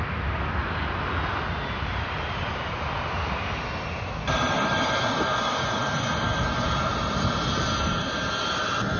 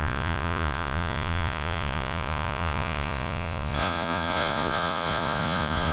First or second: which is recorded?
first